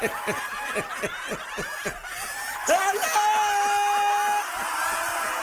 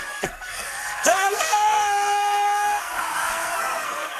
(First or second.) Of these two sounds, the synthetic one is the second